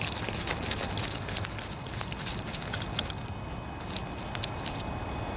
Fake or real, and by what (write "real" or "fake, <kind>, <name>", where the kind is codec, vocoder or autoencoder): real